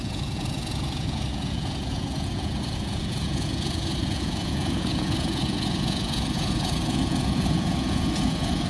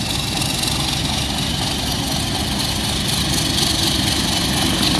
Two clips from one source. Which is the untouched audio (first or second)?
second